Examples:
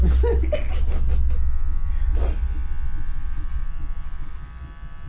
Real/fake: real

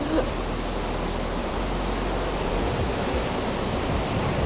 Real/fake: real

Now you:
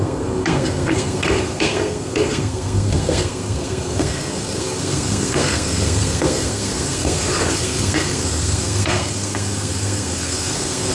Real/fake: fake